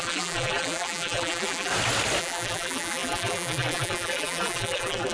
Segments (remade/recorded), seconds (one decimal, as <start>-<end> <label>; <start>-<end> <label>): 0.0-1.7 remade; 1.7-2.2 recorded; 2.2-5.1 remade